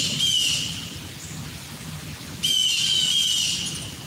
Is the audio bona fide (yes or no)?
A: yes